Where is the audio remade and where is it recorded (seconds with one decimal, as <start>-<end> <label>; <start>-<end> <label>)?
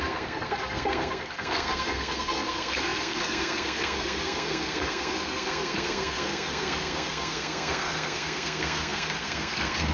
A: 0.0-9.9 remade